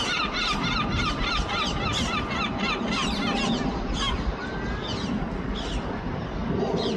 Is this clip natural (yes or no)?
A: yes